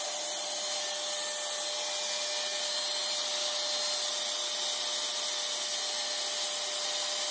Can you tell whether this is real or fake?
real